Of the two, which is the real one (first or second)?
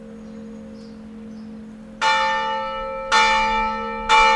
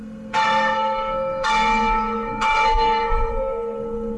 first